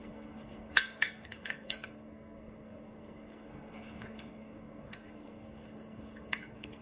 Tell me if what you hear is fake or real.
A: fake